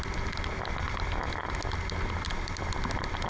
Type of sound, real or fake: real